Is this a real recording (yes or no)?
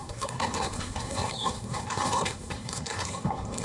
no